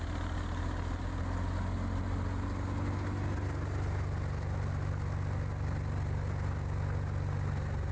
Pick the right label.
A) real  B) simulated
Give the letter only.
A